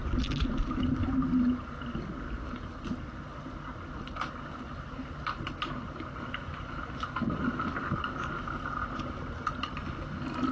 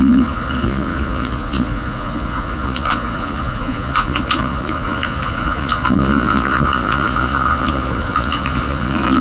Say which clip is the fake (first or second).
second